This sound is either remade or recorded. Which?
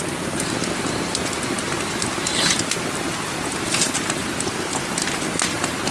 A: recorded